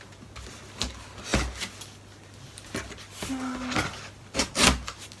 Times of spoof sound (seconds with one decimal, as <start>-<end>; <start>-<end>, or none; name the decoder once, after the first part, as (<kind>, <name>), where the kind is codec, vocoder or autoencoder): none